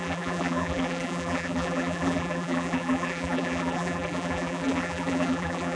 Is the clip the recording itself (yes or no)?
no